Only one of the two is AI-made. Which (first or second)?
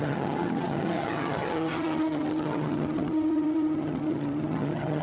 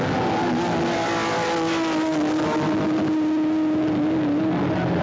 first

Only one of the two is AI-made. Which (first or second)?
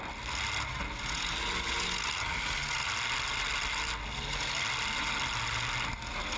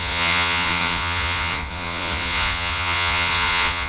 second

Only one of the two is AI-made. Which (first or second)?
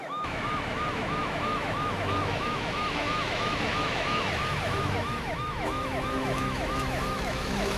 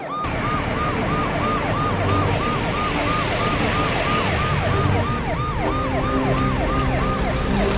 first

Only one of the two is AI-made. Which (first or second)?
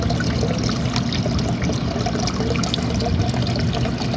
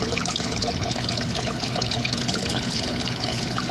second